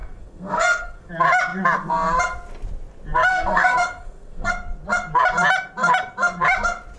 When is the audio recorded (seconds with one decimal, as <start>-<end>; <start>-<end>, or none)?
1.1-3.3; 4.5-7.0